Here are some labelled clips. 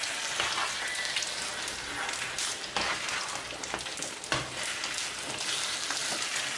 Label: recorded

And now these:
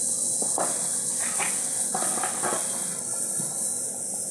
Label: recorded